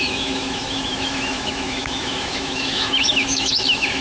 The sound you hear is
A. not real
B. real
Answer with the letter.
A